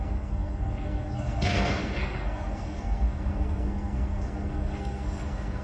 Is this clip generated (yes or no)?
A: yes